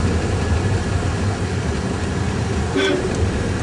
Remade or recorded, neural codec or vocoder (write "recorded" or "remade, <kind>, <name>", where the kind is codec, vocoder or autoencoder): remade, vocoder, BigVGAN v2